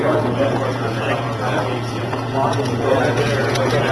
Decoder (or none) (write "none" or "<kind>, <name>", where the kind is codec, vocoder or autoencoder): vocoder, Vocos